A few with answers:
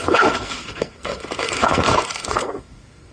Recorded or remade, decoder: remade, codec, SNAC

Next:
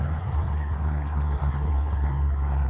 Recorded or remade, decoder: remade, codec, SNAC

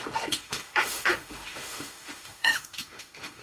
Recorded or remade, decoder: remade, autoencoder, DAC-VAE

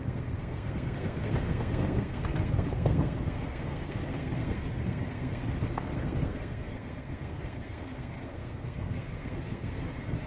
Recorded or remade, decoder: remade, codec, SNAC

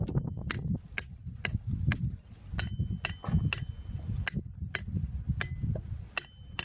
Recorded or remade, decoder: recorded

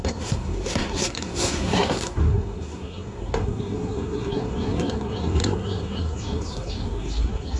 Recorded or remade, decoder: remade, codec, SNAC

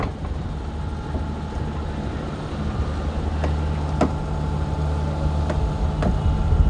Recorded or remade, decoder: recorded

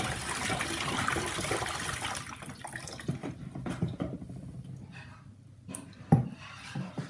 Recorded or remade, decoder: remade, vocoder, BigVGAN v2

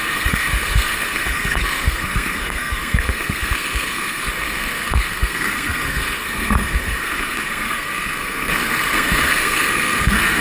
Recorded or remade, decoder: remade, codec, SNAC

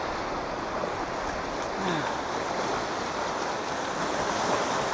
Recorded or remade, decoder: recorded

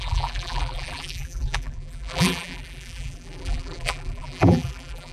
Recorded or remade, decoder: remade, vocoder, BigVGAN v2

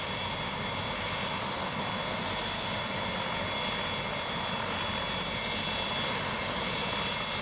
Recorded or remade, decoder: recorded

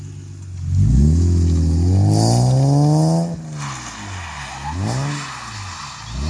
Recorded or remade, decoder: recorded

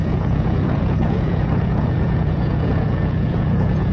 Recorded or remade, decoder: remade, vocoder, Vocos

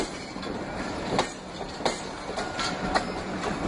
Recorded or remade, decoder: recorded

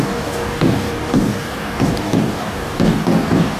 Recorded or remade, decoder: remade, codec, DAC